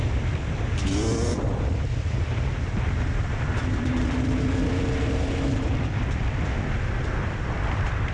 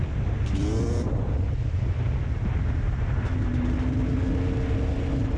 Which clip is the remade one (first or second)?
first